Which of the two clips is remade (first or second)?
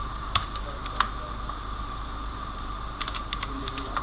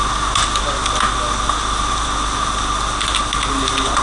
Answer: first